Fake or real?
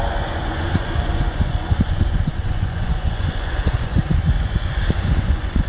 fake